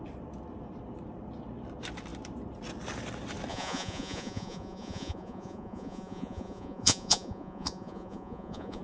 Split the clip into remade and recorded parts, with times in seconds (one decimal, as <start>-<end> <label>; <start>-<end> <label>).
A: 0.0-3.5 recorded; 3.5-8.8 remade